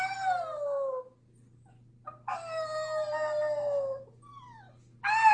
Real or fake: real